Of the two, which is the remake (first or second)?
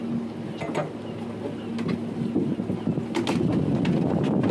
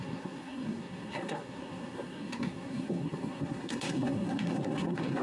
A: second